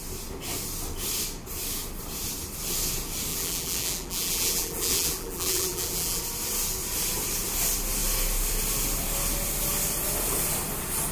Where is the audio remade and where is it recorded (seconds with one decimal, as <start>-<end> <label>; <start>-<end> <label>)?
0.0-3.3 recorded; 3.3-6.2 remade; 6.2-11.1 recorded